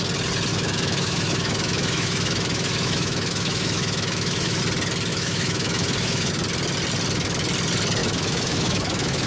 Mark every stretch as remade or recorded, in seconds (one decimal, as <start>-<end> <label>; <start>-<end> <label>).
0.0-0.5 recorded; 0.5-4.6 remade; 4.6-5.1 recorded; 5.1-6.3 remade; 6.3-8.0 recorded; 8.0-9.3 remade